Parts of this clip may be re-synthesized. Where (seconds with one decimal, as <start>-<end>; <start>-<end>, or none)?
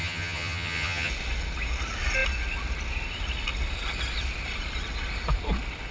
0.0-1.1